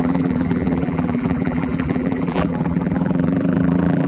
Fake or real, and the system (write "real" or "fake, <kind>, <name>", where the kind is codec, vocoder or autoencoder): fake, vocoder, BigVGAN v2